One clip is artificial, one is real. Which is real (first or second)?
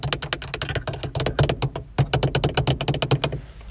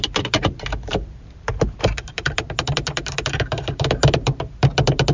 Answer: first